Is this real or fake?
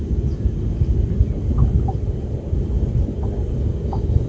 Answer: real